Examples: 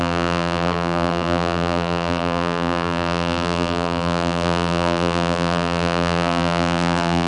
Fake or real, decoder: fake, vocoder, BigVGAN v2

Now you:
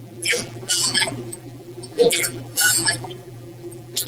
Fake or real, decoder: fake, vocoder, BigVGAN v2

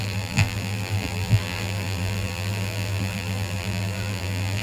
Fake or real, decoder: fake, vocoder, BigVGAN v2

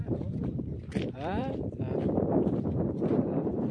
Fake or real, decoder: fake, vocoder, BigVGAN v2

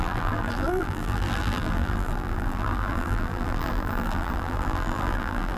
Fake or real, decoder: fake, vocoder, BigVGAN v2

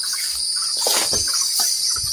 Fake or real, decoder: real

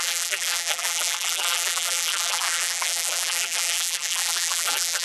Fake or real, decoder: fake, vocoder, BigVGAN v2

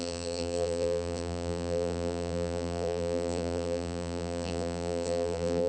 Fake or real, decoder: fake, vocoder, BigVGAN v2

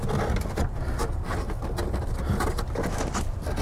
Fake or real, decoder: real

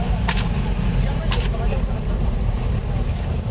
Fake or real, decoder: fake, vocoder, BigVGAN v2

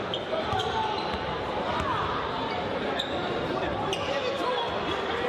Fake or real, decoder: fake, vocoder, BigVGAN v2